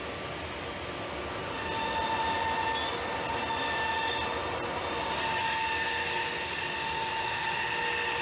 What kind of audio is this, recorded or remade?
recorded